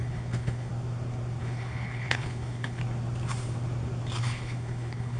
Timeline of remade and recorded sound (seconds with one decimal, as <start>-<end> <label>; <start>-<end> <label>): 0.0-0.7 remade; 0.7-1.4 recorded; 1.4-2.8 remade; 2.8-4.2 recorded; 4.2-5.2 remade